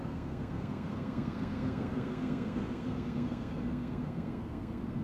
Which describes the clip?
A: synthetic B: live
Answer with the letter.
A